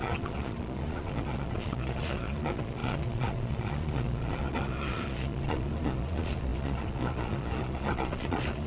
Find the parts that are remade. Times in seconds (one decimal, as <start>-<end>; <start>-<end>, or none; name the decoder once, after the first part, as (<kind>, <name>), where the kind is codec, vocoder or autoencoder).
0.0-8.7 (vocoder, Vocos)

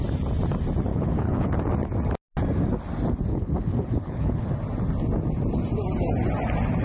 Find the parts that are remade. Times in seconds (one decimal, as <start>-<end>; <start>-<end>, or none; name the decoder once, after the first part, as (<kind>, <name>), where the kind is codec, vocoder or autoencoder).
0.9-1.5 (codec, HILCodec); 3.3-4.5

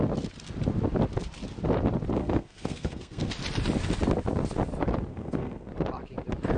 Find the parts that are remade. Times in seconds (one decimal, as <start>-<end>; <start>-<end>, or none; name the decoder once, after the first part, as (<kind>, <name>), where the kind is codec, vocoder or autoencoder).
2.2-3.3 (codec, SNAC); 5.1-5.7

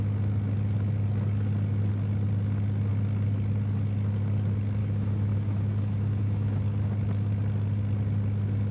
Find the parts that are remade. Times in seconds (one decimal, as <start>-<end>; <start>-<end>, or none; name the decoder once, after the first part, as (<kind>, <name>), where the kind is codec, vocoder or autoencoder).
4.8-6.6 (autoencoder, DAC-VAE)

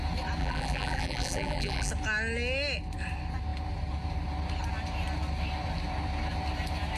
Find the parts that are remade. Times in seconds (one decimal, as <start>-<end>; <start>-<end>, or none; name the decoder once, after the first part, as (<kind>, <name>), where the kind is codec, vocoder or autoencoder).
0.4-1.9 (vocoder, BigVGAN v2)